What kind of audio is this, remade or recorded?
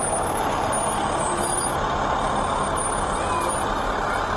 recorded